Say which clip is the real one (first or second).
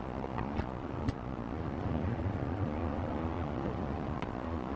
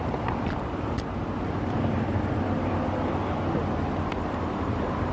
second